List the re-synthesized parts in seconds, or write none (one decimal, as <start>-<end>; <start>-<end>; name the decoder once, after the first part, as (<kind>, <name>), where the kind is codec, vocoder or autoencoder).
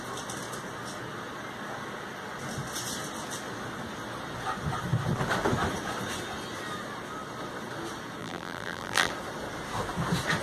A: 8.2-9.1 (vocoder, BigVGAN v2)